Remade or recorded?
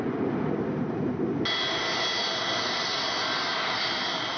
recorded